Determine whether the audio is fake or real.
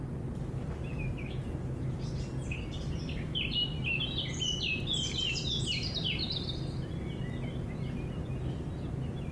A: real